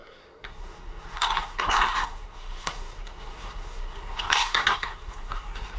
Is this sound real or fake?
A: fake